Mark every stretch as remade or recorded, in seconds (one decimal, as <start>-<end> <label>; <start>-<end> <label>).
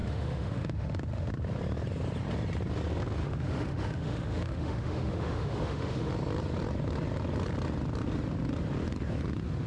0.0-1.3 remade; 1.3-3.2 recorded; 3.2-6.1 remade; 6.1-9.7 recorded